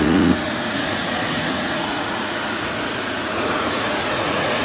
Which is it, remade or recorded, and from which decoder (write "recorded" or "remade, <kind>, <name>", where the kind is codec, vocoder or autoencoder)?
remade, vocoder, Vocos